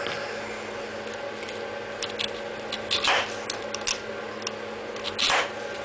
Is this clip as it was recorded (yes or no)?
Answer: yes